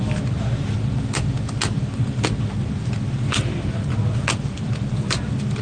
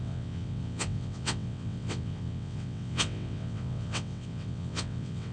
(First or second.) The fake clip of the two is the second